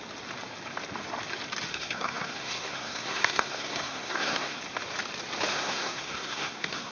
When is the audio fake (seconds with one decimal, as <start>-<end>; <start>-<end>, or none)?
1.7-4.6; 5.5-6.9